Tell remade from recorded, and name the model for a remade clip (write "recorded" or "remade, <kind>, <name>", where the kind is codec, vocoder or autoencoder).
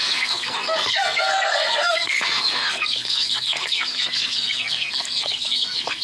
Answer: remade, codec, SNAC